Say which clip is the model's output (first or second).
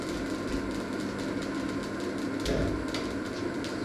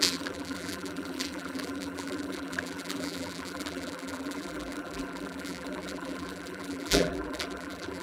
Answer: second